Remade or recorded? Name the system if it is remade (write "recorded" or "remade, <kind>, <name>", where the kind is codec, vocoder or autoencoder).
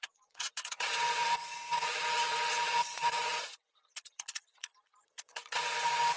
remade, vocoder, Vocos